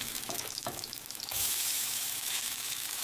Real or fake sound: fake